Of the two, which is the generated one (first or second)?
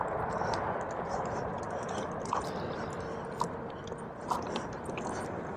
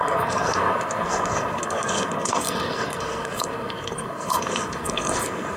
second